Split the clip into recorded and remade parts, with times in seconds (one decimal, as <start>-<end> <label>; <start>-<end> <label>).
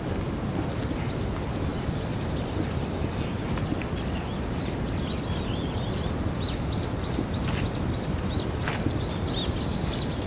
0.0-10.3 recorded